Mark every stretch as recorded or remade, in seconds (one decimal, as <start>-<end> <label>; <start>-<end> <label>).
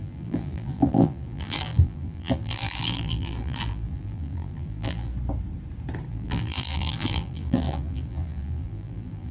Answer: 0.0-5.1 remade; 5.1-6.1 recorded; 6.1-9.3 remade